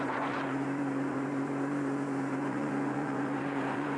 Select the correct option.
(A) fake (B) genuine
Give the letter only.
A